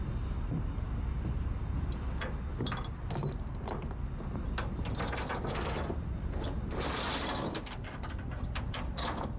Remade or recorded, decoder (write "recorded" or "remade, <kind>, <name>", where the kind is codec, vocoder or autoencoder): recorded